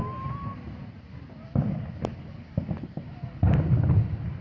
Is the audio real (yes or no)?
yes